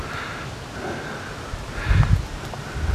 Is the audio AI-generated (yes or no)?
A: no